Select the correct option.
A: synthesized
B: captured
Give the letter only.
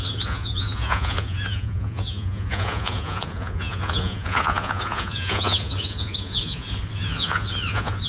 A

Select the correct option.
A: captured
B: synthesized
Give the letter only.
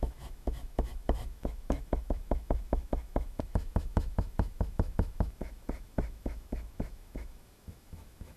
B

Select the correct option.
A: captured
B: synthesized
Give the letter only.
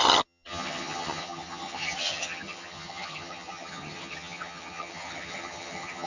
B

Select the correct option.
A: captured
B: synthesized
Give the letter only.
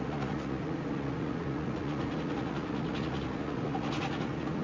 B